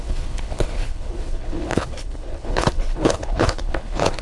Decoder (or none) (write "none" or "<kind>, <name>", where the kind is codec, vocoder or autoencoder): codec, HILCodec